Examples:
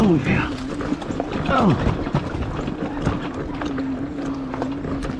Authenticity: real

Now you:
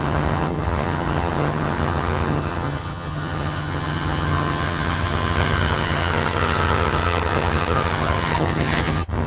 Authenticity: fake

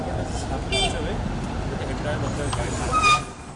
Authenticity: real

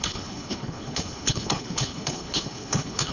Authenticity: fake